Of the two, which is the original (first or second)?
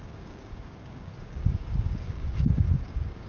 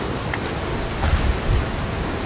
second